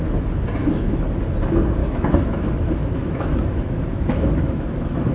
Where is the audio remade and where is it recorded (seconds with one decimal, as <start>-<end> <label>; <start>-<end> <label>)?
0.0-0.6 recorded; 0.6-1.2 remade; 1.2-1.8 recorded; 1.8-5.1 remade